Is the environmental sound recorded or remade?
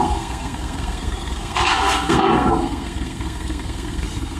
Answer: remade